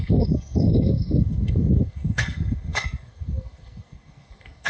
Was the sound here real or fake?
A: fake